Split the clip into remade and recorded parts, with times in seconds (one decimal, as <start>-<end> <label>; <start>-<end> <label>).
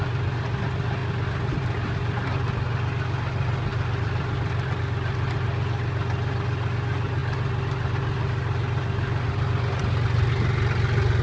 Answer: 0.0-3.7 recorded; 3.7-4.8 remade; 4.8-11.2 recorded